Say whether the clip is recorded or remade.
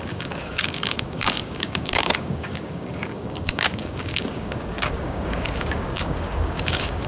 remade